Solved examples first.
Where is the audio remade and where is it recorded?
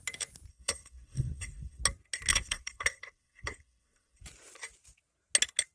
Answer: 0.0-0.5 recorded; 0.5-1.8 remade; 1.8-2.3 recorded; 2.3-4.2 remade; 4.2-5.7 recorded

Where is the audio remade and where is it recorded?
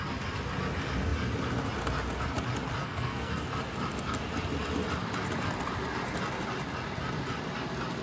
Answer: 0.0-2.8 recorded; 2.8-3.5 remade; 3.5-8.0 recorded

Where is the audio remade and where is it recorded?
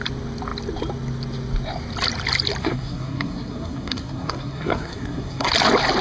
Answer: 0.0-2.6 recorded; 2.6-5.5 remade; 5.5-6.0 recorded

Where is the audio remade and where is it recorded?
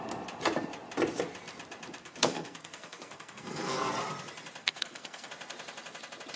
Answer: 0.0-2.0 recorded; 2.0-3.9 remade; 3.9-4.6 recorded; 4.6-5.3 remade; 5.3-6.4 recorded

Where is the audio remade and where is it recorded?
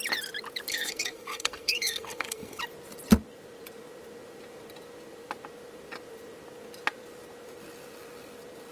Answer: 0.0-0.7 recorded; 0.7-2.6 remade; 2.6-8.7 recorded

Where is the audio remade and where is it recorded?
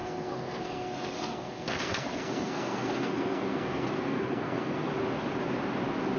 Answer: 0.0-4.9 remade; 4.9-6.2 recorded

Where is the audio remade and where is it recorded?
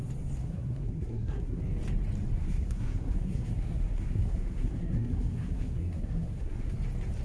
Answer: 0.0-0.4 recorded; 0.4-1.6 remade; 1.6-2.4 recorded; 2.4-6.7 remade; 6.7-7.2 recorded